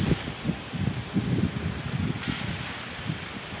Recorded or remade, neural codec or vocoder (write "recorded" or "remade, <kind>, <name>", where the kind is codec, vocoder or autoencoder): recorded